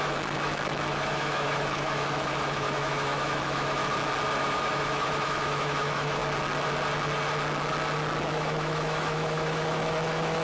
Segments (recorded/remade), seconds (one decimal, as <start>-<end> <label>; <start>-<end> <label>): 0.0-3.8 remade; 3.8-4.4 recorded; 4.4-6.2 remade; 6.2-8.2 recorded; 8.2-10.4 remade